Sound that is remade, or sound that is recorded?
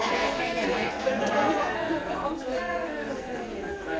remade